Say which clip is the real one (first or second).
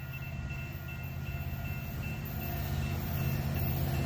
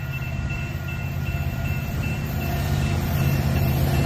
first